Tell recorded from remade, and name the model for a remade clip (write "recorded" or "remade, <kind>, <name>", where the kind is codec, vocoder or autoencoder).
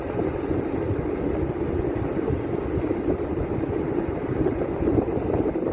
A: recorded